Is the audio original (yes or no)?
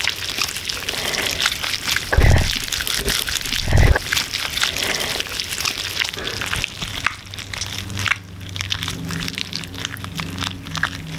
yes